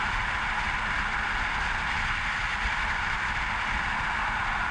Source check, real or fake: real